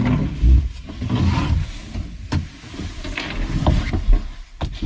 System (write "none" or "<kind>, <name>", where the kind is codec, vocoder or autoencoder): none